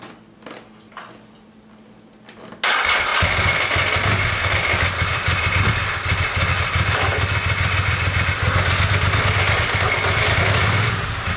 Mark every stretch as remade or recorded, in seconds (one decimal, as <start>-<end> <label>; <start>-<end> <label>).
0.0-11.4 recorded